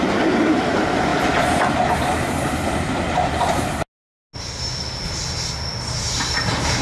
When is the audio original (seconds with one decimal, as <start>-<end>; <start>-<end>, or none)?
0.0-6.8